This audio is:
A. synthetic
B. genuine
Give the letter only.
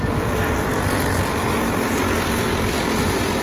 B